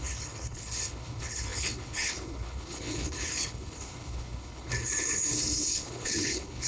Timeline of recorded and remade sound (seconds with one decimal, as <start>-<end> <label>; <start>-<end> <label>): 0.0-6.7 remade